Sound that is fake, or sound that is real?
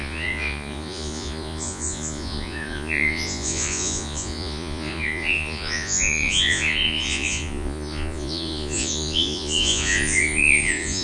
fake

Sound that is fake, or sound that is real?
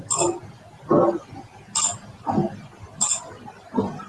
real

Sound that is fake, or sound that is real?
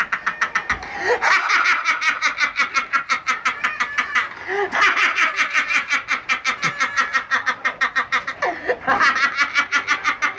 real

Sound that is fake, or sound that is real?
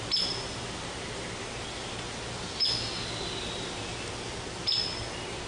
real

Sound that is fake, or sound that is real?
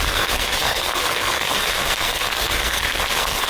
fake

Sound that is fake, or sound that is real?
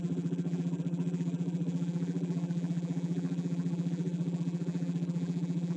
fake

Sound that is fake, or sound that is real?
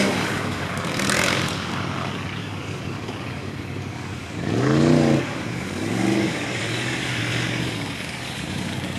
fake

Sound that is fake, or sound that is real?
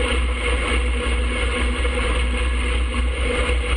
real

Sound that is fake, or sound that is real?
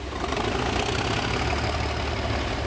real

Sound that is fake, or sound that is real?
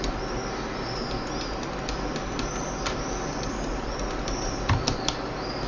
real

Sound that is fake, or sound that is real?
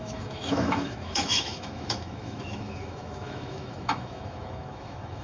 fake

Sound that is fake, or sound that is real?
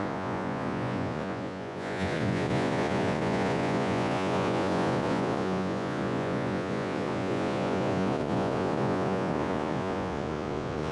fake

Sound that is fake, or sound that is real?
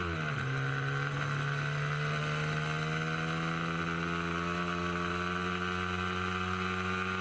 real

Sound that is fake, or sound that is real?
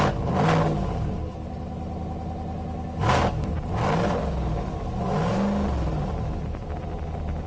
real